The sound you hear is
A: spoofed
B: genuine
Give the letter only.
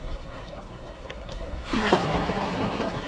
A